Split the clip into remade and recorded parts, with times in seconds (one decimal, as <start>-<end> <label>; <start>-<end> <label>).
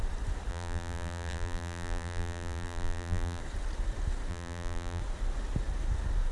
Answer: 0.0-0.5 recorded; 0.5-3.4 remade; 3.4-4.3 recorded; 4.3-5.0 remade; 5.0-6.3 recorded